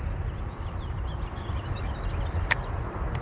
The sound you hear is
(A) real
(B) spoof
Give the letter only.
A